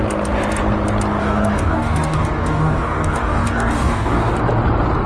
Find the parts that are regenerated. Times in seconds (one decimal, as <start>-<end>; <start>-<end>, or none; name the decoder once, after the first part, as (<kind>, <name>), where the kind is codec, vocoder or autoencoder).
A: 1.2-4.3 (codec, DAC)